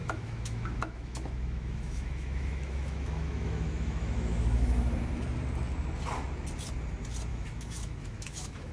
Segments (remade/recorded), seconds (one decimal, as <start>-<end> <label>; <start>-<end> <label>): 0.0-4.8 remade; 4.8-7.3 recorded; 7.3-8.7 remade